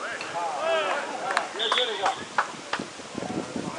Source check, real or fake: real